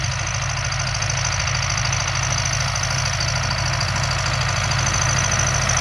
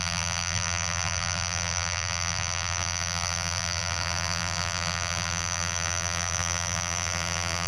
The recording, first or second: first